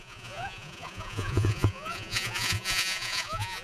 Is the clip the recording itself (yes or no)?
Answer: no